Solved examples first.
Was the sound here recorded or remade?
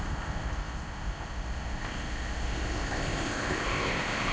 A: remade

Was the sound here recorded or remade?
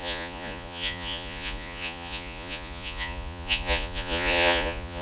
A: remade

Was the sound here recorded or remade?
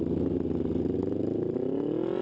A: recorded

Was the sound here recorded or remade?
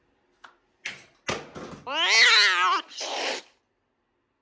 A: recorded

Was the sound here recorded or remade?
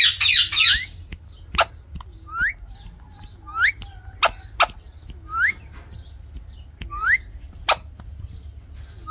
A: recorded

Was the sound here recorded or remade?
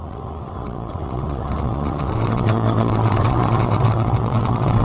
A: remade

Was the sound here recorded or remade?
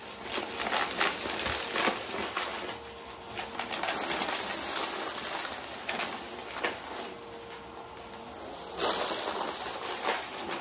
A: recorded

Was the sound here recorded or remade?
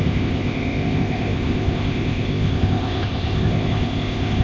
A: remade